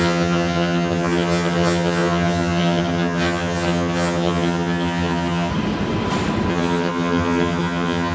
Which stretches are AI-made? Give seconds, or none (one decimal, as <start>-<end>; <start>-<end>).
0.0-5.5; 6.5-8.1